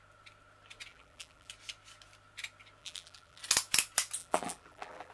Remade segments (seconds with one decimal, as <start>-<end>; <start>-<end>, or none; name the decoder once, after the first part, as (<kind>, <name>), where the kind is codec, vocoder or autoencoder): 0.9-1.5 (vocoder, BigVGAN v2); 2.8-3.4; 4.2-5.1